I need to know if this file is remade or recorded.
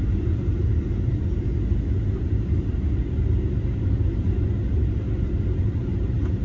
recorded